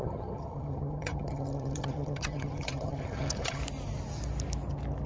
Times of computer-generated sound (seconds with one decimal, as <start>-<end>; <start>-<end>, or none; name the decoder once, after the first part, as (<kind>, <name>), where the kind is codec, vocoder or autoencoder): 0.0-3.6 (vocoder, HiFi-GAN)